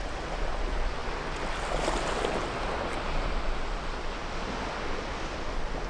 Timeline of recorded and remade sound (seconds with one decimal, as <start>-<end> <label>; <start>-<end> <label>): 0.0-5.9 recorded